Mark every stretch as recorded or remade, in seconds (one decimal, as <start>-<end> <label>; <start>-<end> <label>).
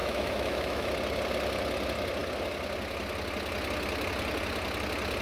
0.0-0.9 remade; 0.9-5.2 recorded